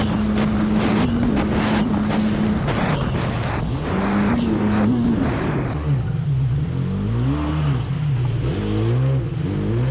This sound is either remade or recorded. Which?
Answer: recorded